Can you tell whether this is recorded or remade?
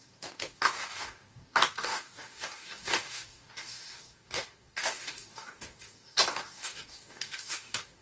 remade